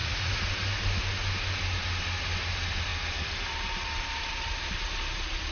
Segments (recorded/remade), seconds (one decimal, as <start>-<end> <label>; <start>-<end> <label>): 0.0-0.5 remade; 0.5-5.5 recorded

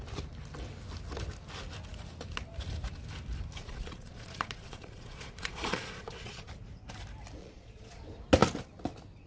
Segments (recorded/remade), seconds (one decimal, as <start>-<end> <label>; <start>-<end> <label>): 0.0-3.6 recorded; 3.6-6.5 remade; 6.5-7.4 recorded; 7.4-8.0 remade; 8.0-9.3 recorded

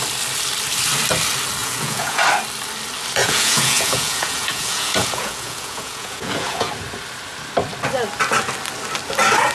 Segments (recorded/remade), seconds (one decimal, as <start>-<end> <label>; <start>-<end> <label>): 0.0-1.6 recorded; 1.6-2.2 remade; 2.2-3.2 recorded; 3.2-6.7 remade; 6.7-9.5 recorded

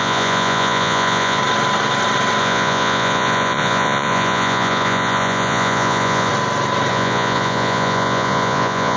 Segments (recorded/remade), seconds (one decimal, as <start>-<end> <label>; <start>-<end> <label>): 0.0-1.4 remade; 1.4-2.4 recorded; 2.4-6.3 remade; 6.3-6.9 recorded; 6.9-9.0 remade

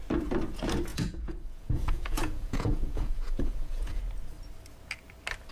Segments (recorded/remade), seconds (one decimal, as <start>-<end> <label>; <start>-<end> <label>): 0.0-0.9 recorded; 0.9-4.0 remade; 4.0-5.5 recorded

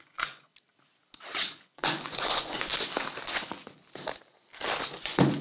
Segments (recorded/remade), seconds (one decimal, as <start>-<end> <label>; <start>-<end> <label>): 0.0-0.5 remade; 0.5-1.5 recorded; 1.5-2.7 remade; 2.7-3.3 recorded; 3.3-3.8 remade; 3.8-5.0 recorded; 5.0-5.4 remade

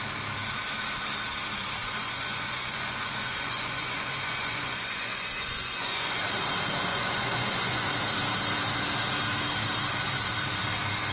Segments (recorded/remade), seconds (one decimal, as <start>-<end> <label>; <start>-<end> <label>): 0.0-1.8 recorded; 1.8-6.2 remade; 6.2-6.9 recorded; 6.9-8.0 remade; 8.0-11.1 recorded

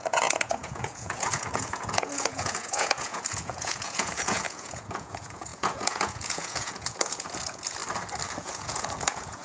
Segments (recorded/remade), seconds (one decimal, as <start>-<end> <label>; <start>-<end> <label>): 0.0-7.8 remade; 7.8-8.4 recorded; 8.4-9.4 remade